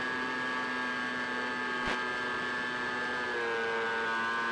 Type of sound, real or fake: real